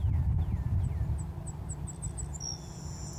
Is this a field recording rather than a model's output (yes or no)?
yes